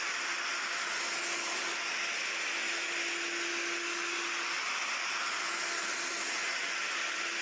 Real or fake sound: real